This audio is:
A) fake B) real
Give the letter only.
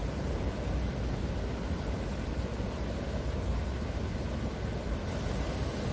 B